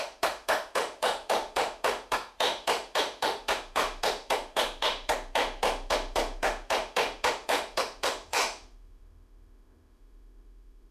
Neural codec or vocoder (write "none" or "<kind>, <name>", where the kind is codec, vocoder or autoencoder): autoencoder, DAC-VAE